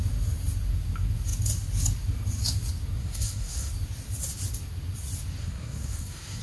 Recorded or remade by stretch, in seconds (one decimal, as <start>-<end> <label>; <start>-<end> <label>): 0.0-3.0 recorded; 3.0-3.7 remade; 3.7-5.4 recorded; 5.4-6.4 remade